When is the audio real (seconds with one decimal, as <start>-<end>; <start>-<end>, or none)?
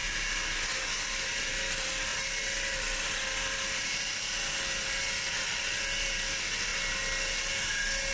0.0-2.1; 5.0-8.1